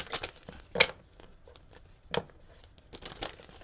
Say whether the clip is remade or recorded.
recorded